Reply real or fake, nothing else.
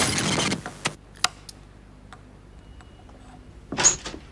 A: real